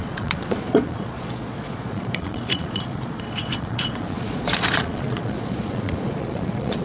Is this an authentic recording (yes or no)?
no